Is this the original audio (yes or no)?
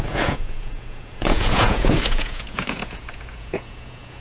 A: no